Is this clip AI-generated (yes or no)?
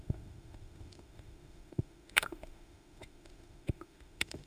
yes